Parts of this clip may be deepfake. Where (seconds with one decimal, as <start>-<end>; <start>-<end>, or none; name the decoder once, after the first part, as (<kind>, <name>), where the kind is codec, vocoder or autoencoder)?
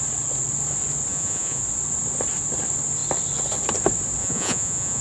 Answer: 1.1-1.6 (vocoder, Vocos); 4.2-5.0